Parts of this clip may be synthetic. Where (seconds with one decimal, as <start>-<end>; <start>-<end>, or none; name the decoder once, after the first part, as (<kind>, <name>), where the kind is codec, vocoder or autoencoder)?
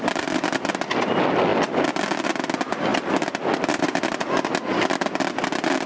none